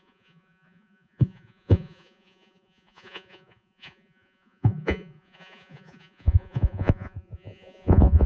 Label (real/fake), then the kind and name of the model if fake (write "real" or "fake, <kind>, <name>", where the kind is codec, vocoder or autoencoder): fake, vocoder, Vocos